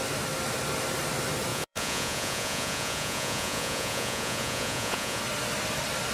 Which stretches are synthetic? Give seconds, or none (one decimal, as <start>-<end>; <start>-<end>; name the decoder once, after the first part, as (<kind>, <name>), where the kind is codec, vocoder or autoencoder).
1.5-5.2 (vocoder, Vocos)